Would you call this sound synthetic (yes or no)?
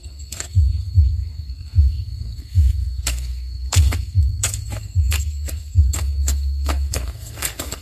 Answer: yes